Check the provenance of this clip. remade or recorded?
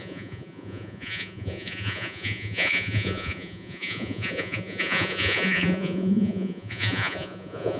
remade